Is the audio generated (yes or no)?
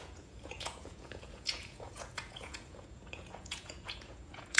yes